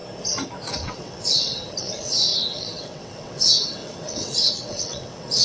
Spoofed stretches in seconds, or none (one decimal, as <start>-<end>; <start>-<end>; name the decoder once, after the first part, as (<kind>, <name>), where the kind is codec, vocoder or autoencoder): 0.7-5.4 (vocoder, WaveNeXt)